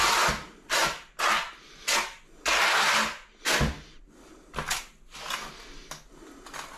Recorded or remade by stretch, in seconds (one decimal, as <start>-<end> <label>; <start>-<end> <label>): 0.0-6.8 recorded

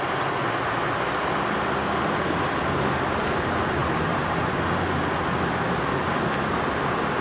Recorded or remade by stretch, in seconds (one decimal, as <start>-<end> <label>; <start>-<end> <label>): 0.0-3.8 recorded; 3.8-4.7 remade; 4.7-7.2 recorded

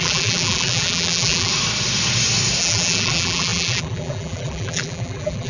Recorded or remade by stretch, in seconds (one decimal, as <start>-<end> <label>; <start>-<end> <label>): 0.0-1.5 remade; 1.5-2.6 recorded; 2.6-5.5 remade

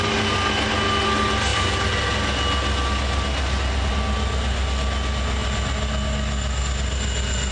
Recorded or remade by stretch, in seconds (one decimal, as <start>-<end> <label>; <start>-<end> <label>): 0.0-7.5 recorded